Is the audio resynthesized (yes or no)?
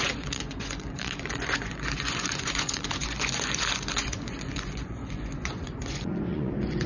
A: yes